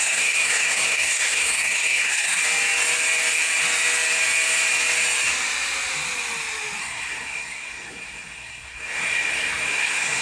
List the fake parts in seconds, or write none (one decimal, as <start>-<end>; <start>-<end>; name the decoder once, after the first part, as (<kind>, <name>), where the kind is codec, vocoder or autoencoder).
0.0-2.4 (codec, SNAC); 6.8-10.2